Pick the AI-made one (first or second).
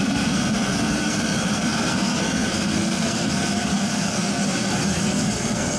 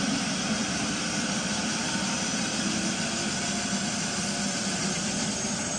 first